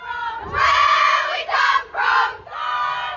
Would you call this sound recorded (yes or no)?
yes